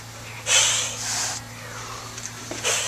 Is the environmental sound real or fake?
real